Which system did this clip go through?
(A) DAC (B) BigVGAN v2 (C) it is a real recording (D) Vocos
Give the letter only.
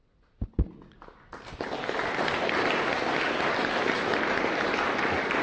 C